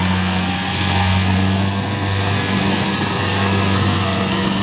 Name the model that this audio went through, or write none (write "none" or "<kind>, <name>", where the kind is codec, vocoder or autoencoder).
codec, SNAC